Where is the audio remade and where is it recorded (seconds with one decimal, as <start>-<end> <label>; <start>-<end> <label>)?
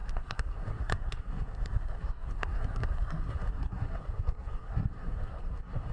0.0-5.9 remade